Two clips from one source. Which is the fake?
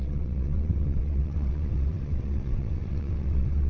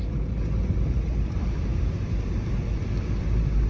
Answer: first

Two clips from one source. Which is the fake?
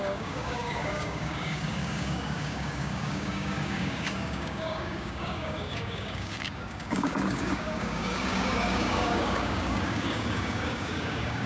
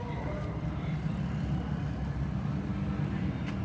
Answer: first